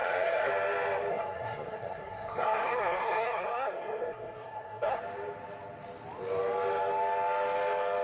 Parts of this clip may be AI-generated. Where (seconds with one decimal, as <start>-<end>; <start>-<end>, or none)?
0.0-0.5; 1.1-5.0